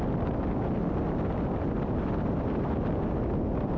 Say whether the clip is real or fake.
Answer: real